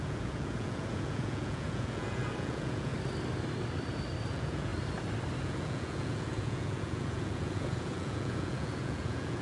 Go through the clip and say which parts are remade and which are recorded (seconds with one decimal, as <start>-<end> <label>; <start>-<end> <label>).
0.0-2.9 remade; 2.9-4.3 recorded; 4.3-4.7 remade; 4.7-5.4 recorded; 5.4-9.4 remade